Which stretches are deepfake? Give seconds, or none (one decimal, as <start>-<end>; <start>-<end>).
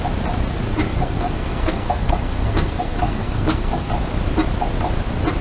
0.7-3.9